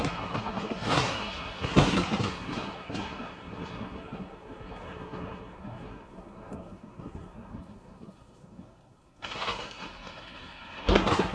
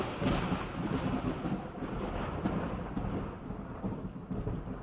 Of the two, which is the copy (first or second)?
first